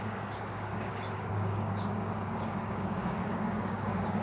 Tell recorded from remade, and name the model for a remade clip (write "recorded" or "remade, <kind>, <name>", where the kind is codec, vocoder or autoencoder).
remade, codec, DAC